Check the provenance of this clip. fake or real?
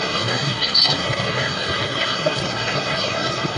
fake